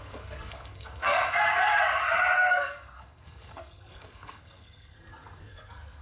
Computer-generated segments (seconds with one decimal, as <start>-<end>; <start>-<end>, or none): 0.0-1.7; 2.5-6.0